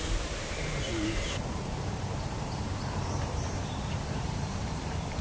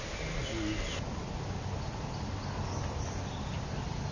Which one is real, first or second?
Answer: second